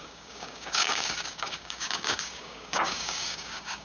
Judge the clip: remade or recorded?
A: remade